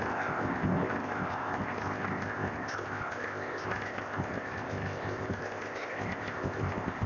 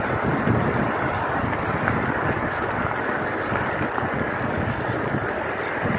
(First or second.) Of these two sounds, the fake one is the first